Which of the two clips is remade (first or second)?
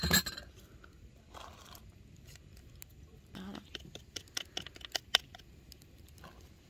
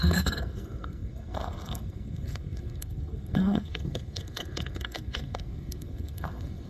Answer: second